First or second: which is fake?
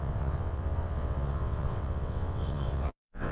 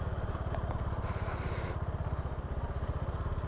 first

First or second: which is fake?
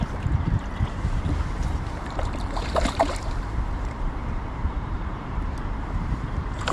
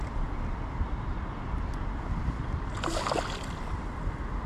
first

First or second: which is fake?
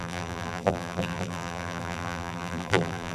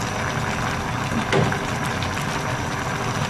first